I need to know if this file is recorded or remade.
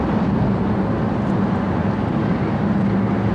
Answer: recorded